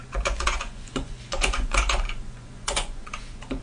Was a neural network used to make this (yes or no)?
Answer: yes